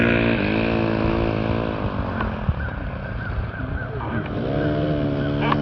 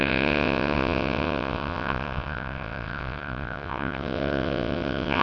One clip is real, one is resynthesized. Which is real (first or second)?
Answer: first